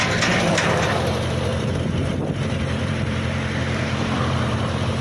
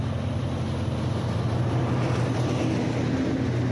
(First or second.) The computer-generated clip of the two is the first